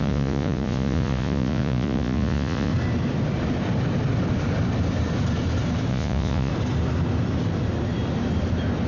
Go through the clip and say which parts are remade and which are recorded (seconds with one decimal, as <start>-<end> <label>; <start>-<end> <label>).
0.0-2.7 remade; 2.7-5.9 recorded; 5.9-6.5 remade; 6.5-8.9 recorded